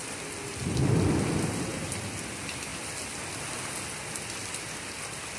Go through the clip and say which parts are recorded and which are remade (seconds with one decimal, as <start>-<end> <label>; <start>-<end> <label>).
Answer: 0.0-5.4 recorded